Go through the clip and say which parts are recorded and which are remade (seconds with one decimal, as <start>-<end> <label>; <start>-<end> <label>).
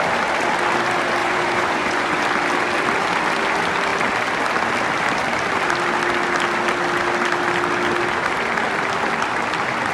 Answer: 0.0-1.2 recorded; 1.2-2.2 remade; 2.2-9.9 recorded